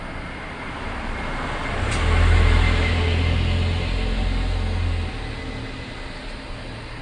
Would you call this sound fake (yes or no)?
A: no